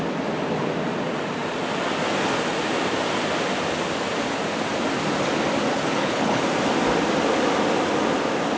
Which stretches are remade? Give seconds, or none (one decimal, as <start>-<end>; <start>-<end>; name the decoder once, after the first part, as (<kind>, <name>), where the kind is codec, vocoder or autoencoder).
5.7-6.4 (codec, HILCodec)